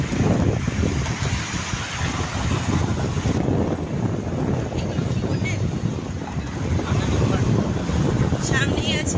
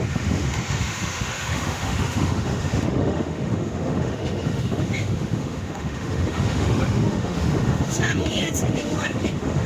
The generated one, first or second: second